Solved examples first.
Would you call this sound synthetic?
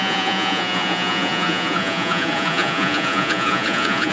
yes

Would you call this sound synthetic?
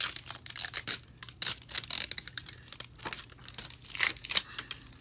no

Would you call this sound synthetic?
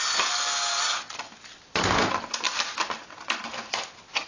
no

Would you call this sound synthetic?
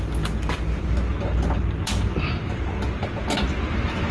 no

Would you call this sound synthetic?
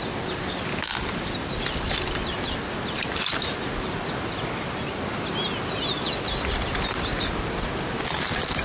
no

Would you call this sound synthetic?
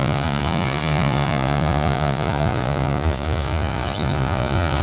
yes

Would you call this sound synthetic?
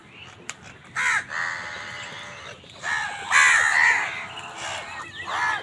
no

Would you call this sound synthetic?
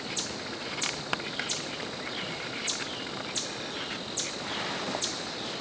no